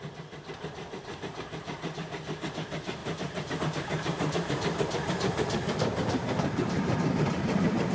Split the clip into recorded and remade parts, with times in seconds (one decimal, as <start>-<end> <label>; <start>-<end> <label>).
0.0-7.9 remade